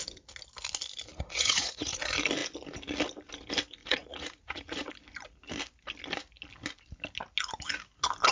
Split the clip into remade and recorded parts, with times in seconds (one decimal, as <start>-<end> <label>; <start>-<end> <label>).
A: 0.0-1.1 recorded; 1.1-2.0 remade; 2.0-3.8 recorded; 3.8-4.9 remade; 4.9-8.3 recorded